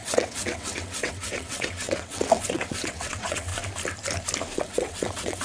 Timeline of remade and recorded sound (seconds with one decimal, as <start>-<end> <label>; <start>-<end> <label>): 0.0-3.5 remade; 3.5-4.6 recorded; 4.6-5.4 remade